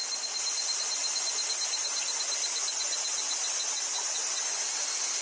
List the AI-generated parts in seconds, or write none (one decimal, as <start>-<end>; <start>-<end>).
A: none